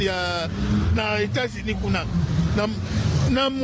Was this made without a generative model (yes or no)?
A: yes